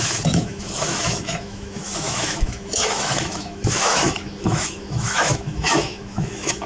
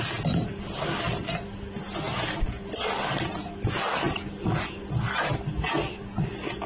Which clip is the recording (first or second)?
second